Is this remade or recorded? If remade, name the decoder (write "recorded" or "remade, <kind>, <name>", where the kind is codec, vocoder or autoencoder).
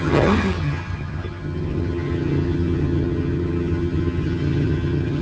remade, vocoder, HiFi-GAN